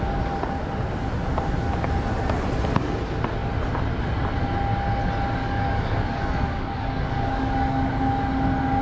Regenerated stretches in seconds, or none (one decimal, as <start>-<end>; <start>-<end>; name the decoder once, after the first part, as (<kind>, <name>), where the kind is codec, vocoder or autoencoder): 5.4-7.9 (codec, DAC)